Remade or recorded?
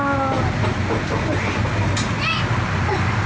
recorded